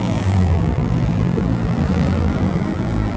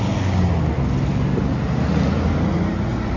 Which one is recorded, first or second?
second